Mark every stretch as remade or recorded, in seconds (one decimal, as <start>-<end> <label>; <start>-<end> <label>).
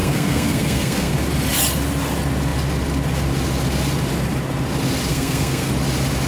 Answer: 0.0-1.1 remade; 1.1-5.1 recorded; 5.1-5.7 remade; 5.7-6.3 recorded